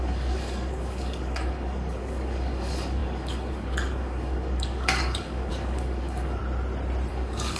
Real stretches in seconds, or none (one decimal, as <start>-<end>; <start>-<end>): 6.4-7.1